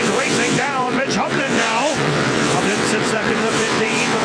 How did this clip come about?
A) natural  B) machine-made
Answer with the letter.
B